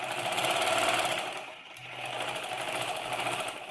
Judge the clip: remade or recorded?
remade